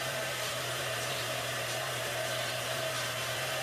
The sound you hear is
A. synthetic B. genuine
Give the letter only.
A